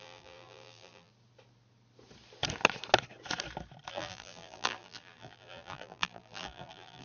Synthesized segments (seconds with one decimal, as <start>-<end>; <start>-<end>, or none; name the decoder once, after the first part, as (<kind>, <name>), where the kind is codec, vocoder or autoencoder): 0.0-1.1 (vocoder, BigVGAN v2); 3.9-7.0